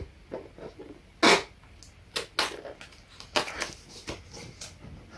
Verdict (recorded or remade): recorded